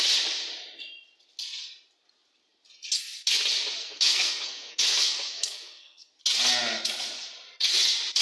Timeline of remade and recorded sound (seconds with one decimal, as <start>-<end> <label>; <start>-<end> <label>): 0.0-3.8 recorded; 3.8-6.1 remade; 6.1-8.2 recorded